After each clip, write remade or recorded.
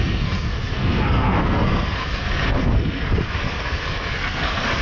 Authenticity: remade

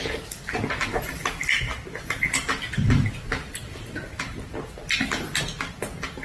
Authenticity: recorded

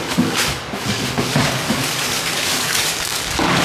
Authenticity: remade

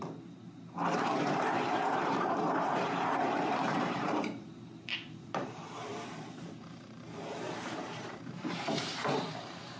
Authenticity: remade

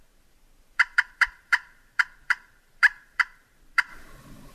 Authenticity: remade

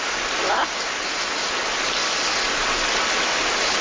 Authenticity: recorded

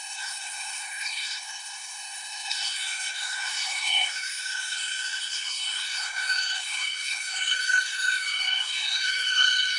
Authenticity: remade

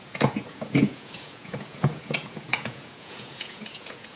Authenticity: remade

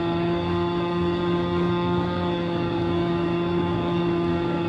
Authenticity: remade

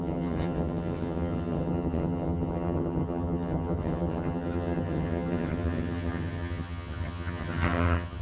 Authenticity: remade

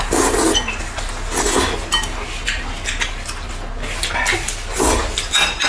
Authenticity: recorded